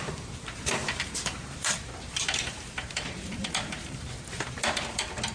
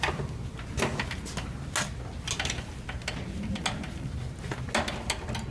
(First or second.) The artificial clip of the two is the first